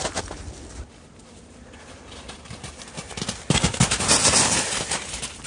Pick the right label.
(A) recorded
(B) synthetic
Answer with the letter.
A